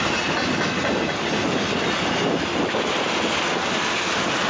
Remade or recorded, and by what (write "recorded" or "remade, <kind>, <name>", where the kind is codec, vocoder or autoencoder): recorded